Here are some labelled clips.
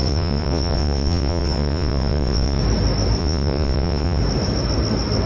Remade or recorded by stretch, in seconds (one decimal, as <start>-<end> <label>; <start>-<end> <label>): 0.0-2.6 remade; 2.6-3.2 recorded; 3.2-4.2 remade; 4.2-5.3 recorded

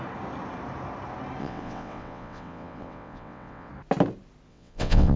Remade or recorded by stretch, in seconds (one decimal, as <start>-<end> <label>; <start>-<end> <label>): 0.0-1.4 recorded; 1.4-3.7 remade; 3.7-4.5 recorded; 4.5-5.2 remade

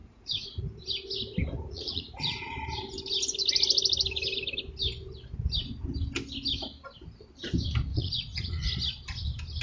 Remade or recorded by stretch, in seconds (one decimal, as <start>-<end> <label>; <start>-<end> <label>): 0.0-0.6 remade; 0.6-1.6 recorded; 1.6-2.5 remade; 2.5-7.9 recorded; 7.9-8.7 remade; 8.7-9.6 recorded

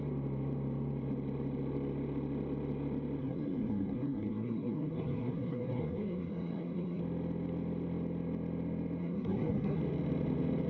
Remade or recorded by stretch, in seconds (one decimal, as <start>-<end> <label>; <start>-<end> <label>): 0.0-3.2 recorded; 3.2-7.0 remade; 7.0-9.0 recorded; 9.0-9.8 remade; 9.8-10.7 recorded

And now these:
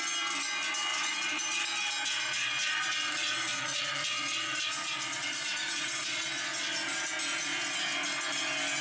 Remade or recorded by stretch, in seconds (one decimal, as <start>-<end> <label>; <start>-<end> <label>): 0.0-0.9 recorded; 0.9-1.6 remade; 1.6-2.1 recorded; 2.1-6.2 remade; 6.2-8.8 recorded

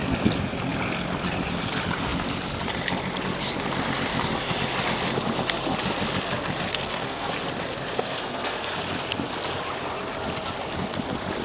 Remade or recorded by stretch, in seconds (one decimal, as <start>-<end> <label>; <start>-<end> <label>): 0.0-6.7 recorded; 6.7-7.3 remade; 7.3-7.9 recorded; 7.9-8.7 remade; 8.7-11.4 recorded